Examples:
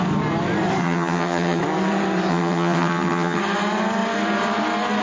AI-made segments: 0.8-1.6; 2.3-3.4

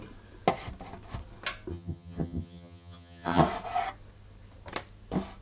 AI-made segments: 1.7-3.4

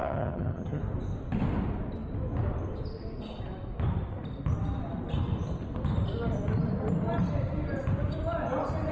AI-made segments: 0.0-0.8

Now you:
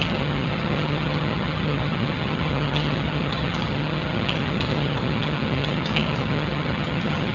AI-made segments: 0.0-7.3

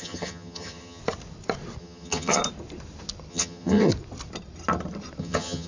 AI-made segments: 0.0-1.0; 1.8-2.4; 3.3-3.9; 5.2-5.7

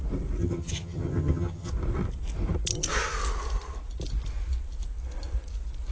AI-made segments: 0.4-1.7